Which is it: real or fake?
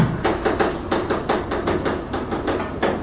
real